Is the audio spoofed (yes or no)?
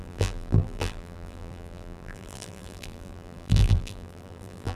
yes